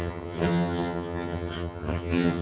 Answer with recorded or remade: remade